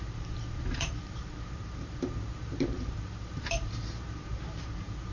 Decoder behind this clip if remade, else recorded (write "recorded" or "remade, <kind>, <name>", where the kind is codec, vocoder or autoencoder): remade, vocoder, BigVGAN v2